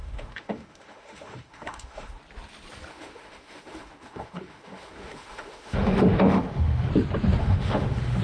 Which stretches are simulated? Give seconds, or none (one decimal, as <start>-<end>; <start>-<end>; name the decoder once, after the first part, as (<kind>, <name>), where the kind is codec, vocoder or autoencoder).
0.0-2.2 (autoencoder, DAC-VAE); 2.9-6.9; 7.4-8.2

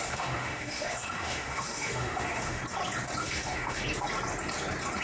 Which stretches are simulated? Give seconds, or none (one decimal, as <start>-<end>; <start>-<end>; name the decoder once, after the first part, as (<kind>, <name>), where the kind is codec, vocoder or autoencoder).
0.0-2.6 (autoencoder, DAC-VAE); 3.2-3.8

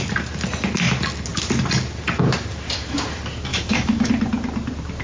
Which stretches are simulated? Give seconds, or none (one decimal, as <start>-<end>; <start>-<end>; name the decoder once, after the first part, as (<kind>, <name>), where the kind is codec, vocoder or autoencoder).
3.5-4.1 (autoencoder, DAC-VAE)